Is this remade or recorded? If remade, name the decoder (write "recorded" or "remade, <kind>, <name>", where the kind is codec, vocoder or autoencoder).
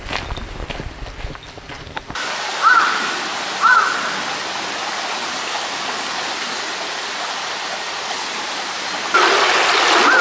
recorded